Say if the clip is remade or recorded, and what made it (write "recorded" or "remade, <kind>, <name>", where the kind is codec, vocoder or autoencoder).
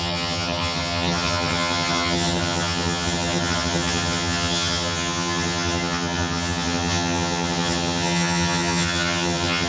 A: remade, vocoder, HiFi-GAN